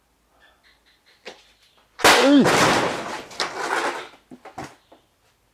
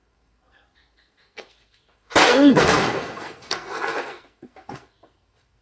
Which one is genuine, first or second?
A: first